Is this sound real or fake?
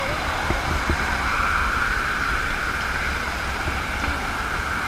real